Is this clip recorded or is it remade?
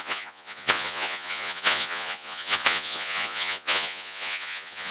remade